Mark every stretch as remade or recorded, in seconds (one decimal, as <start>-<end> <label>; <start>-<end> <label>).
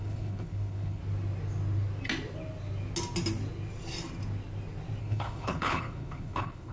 0.0-1.0 remade; 1.0-5.0 recorded; 5.0-6.7 remade